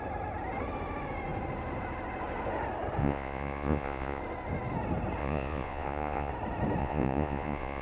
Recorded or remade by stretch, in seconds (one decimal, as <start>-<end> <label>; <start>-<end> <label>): 0.0-3.0 recorded; 3.0-4.2 remade; 4.2-5.2 recorded; 5.2-6.3 remade; 6.3-6.8 recorded; 6.8-7.8 remade